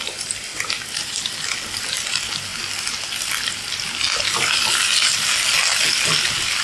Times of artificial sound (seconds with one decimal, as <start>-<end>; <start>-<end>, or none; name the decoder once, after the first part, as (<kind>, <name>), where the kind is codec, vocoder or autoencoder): none